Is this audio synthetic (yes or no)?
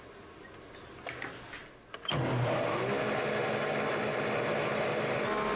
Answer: no